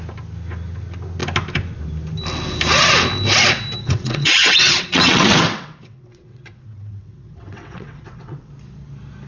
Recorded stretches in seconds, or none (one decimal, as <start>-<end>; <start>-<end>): 0.0-3.8; 8.5-9.3